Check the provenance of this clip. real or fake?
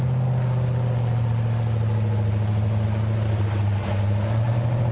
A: real